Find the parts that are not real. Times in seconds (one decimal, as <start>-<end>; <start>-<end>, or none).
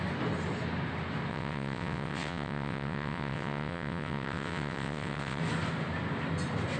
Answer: 1.3-5.4